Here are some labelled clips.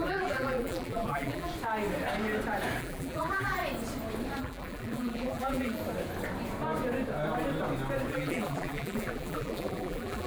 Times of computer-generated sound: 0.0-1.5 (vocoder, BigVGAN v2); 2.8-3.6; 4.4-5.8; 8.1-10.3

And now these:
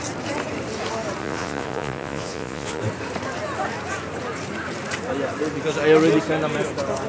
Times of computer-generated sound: 1.2-2.8 (vocoder, Vocos)

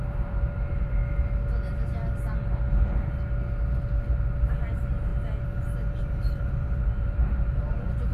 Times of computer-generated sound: 0.0-1.0 (vocoder, BigVGAN v2); 4.4-5.1; 6.0-8.1

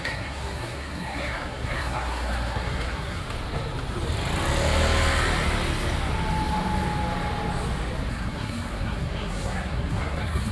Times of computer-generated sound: 0.0-3.2 (codec, SNAC); 8.1-10.5

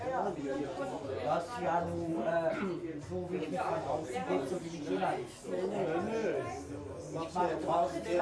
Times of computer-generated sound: none

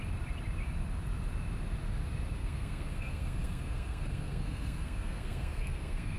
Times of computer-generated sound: 2.4-6.2 (codec, SNAC)